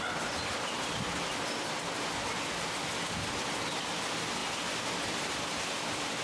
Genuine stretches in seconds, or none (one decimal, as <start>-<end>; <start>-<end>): 0.0-6.2